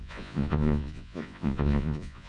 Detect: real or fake fake